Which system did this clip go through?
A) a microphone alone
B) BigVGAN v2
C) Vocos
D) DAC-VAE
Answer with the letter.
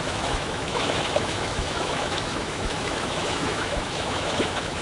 D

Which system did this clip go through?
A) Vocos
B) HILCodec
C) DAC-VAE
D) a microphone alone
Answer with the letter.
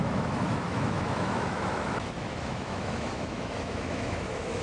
C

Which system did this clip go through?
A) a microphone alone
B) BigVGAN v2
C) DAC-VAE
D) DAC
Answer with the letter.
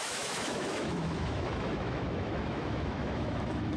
C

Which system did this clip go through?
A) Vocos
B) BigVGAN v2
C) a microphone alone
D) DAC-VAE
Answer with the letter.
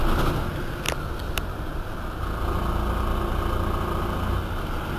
C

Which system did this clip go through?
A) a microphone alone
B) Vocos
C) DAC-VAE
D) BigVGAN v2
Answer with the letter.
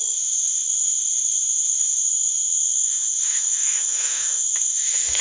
C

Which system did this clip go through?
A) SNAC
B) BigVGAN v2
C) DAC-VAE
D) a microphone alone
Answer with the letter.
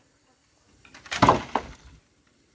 D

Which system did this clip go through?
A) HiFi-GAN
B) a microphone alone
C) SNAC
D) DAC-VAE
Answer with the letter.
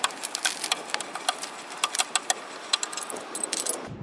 B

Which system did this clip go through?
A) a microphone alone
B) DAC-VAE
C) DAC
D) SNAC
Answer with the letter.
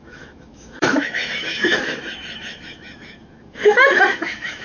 B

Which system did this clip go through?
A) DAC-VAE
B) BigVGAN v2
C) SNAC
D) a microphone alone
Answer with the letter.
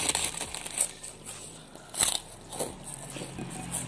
D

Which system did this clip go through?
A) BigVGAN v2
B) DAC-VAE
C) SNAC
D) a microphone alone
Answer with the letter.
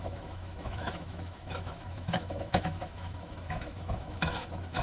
B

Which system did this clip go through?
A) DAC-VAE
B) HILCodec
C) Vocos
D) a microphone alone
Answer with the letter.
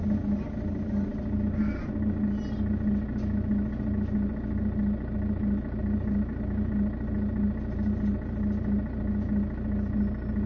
D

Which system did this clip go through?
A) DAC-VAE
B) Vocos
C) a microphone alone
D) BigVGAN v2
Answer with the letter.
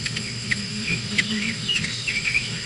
A